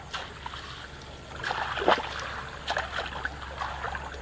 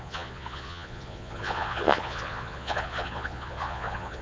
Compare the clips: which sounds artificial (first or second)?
second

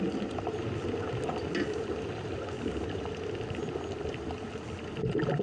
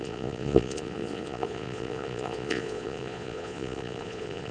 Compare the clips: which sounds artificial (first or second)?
second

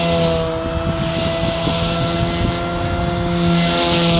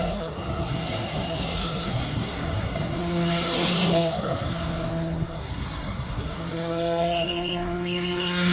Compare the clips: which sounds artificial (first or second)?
second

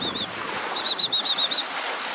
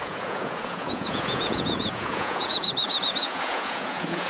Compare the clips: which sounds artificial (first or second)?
second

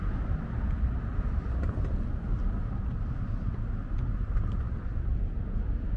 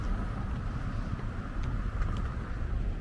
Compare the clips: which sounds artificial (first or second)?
second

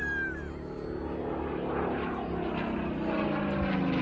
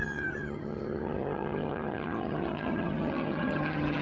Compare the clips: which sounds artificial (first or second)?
second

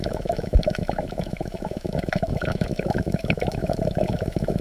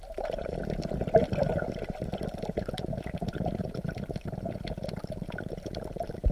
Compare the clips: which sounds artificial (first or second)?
first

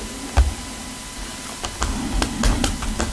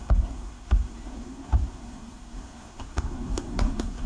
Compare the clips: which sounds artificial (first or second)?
second